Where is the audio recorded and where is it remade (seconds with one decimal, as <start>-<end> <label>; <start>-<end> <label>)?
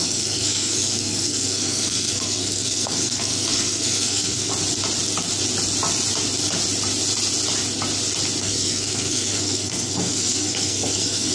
0.0-4.5 remade; 4.5-8.4 recorded; 8.4-11.3 remade